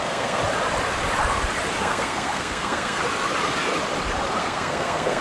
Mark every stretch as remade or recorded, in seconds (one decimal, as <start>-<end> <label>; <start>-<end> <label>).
0.0-0.4 remade; 0.4-1.8 recorded; 1.8-3.0 remade; 3.0-4.4 recorded; 4.4-5.2 remade